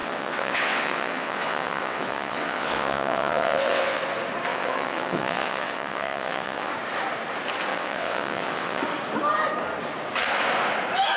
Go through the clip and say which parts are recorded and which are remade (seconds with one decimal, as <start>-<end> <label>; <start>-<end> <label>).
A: 0.0-4.0 remade; 4.0-4.5 recorded; 4.5-6.7 remade; 6.7-7.7 recorded; 7.7-8.8 remade; 8.8-11.2 recorded